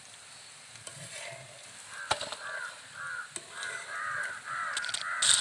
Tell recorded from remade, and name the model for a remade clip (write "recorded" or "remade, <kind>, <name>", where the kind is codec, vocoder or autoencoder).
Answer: recorded